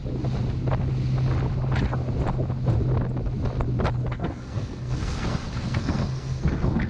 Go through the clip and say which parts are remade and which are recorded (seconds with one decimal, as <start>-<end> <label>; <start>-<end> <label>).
0.0-4.1 recorded; 4.1-6.9 remade